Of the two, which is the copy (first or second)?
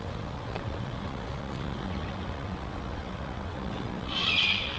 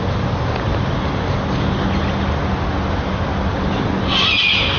first